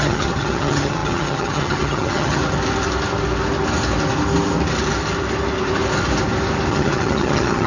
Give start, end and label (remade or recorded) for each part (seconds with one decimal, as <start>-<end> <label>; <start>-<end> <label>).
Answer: 0.0-2.4 remade; 2.4-6.7 recorded; 6.7-7.7 remade